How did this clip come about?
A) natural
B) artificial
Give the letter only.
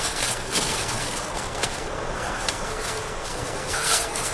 B